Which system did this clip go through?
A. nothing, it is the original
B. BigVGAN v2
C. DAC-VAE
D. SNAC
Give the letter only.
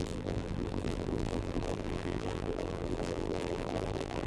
B